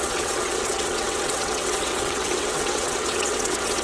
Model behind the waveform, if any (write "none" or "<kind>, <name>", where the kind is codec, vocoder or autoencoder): vocoder, WaveNeXt